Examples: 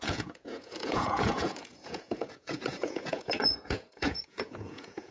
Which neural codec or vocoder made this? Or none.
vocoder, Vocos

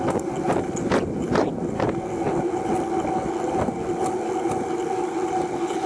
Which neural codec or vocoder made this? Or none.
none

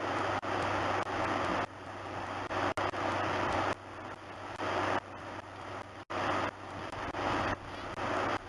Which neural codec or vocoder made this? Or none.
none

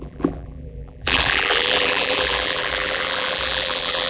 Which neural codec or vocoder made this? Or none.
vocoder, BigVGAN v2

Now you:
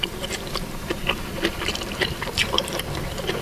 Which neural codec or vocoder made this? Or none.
vocoder, BigVGAN v2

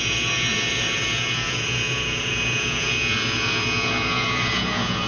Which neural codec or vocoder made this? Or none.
vocoder, Vocos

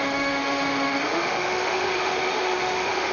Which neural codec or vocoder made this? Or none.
autoencoder, DAC-VAE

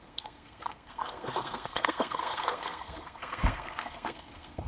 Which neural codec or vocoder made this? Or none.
codec, SNAC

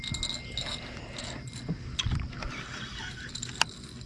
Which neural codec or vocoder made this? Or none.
none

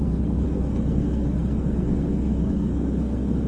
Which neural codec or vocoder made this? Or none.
codec, SNAC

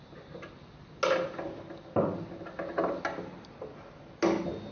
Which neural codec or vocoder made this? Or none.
none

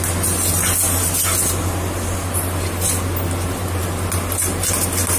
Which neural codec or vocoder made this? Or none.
none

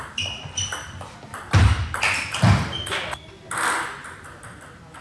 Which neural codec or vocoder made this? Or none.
none